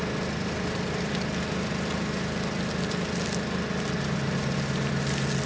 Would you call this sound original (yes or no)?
yes